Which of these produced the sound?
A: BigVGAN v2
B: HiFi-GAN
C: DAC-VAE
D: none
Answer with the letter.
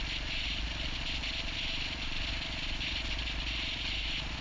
D